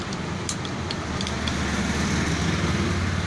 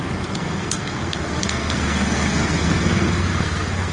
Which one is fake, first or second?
second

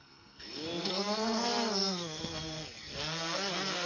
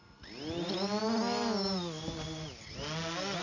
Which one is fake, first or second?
first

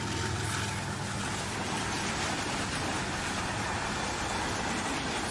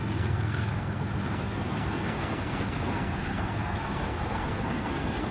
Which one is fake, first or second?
second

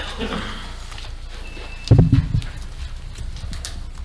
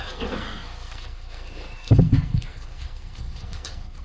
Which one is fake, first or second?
second